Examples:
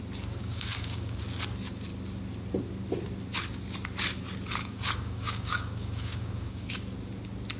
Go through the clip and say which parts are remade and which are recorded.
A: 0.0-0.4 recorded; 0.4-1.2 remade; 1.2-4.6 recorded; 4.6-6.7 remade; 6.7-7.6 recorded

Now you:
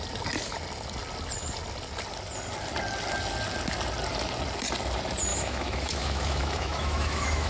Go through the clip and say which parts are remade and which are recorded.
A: 0.0-5.3 recorded; 5.3-7.5 remade

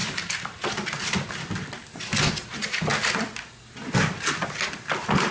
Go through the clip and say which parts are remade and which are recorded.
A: 0.0-5.3 recorded

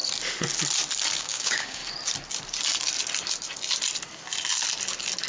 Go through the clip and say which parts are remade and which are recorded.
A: 0.0-1.2 recorded; 1.2-1.8 remade; 1.8-5.3 recorded